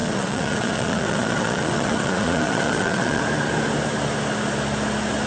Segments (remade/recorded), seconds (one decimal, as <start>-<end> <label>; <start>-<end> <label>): 0.0-3.2 remade; 3.2-5.3 recorded